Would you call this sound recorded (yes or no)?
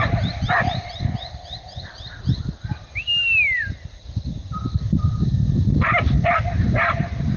yes